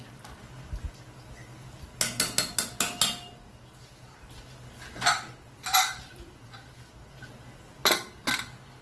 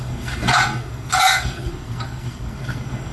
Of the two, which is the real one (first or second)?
first